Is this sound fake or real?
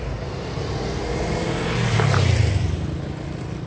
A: real